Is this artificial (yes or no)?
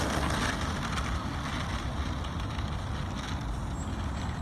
no